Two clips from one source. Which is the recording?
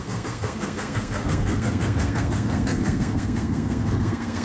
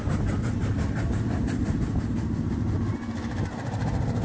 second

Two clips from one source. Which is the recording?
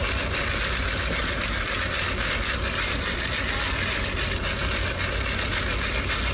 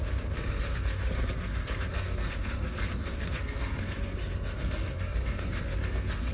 first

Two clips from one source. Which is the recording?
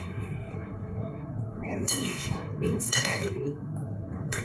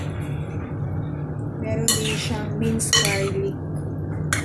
second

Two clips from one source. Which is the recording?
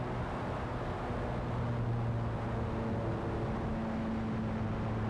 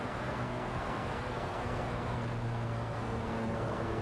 first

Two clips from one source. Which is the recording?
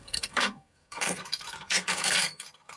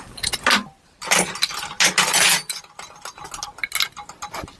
second